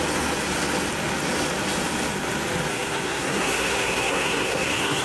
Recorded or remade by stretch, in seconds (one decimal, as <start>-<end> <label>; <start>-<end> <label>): 0.0-2.7 recorded; 2.7-5.0 remade